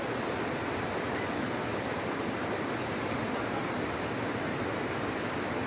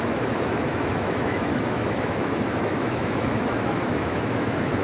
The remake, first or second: second